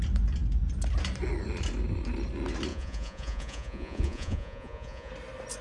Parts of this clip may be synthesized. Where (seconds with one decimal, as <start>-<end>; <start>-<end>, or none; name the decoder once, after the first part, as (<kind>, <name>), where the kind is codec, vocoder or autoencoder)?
2.7-5.1 (vocoder, Vocos)

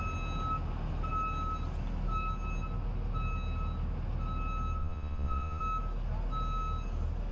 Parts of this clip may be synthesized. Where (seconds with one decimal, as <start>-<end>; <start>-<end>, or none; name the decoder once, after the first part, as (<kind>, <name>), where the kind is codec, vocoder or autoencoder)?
4.8-5.6 (vocoder, Vocos)

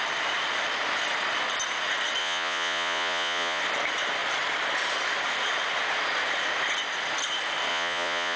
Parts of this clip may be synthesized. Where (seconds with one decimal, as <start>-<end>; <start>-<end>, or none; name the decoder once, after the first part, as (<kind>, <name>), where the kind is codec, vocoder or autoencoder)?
2.2-3.6 (vocoder, Vocos); 7.7-8.4